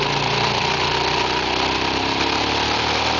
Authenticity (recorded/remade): recorded